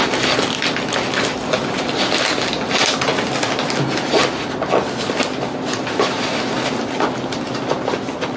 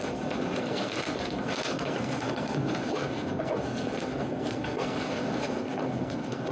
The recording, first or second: first